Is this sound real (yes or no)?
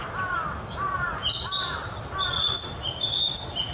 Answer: yes